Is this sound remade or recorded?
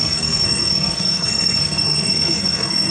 remade